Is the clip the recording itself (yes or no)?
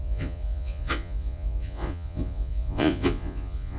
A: no